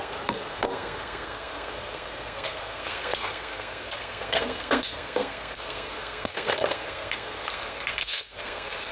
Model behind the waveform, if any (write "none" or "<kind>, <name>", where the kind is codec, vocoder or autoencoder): codec, SNAC